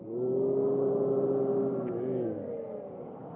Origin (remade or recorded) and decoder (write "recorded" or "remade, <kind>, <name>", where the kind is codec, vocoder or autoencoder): recorded